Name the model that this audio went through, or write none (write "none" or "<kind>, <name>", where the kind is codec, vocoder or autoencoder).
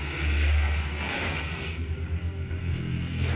codec, SNAC